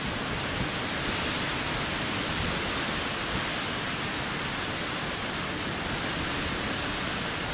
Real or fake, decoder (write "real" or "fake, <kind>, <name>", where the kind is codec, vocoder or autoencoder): real